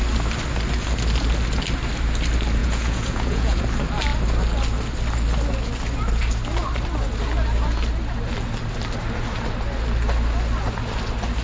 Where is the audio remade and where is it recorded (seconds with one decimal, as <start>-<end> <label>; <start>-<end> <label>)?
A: 0.0-2.6 recorded; 2.6-3.6 remade; 3.6-11.4 recorded